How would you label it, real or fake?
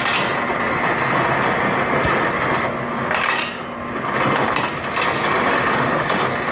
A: real